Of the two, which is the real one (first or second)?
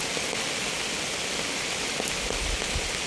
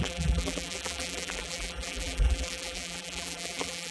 first